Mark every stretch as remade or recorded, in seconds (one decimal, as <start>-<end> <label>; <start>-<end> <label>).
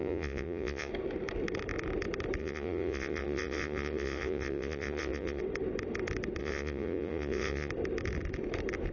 0.0-0.9 remade; 0.9-2.4 recorded; 2.4-5.4 remade; 5.4-6.4 recorded; 6.4-7.7 remade; 7.7-8.9 recorded